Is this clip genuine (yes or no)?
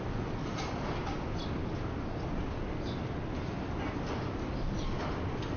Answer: yes